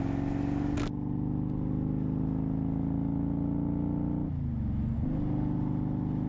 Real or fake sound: real